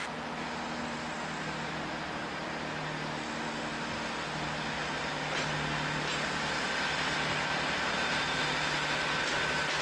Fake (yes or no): no